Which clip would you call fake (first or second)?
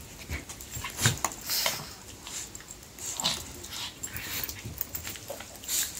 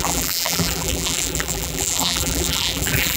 second